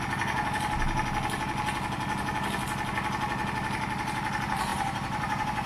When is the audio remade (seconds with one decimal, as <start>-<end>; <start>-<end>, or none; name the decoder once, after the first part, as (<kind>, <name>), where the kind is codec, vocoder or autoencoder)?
4.7-5.7 (vocoder, BigVGAN v2)